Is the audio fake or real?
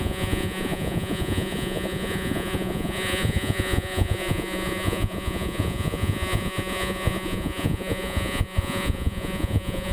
fake